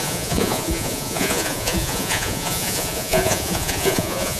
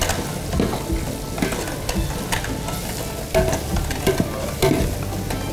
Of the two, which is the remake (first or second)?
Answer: first